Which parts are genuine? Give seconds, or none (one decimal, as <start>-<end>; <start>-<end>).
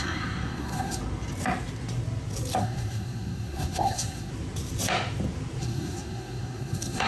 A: 1.0-2.6; 4.3-5.6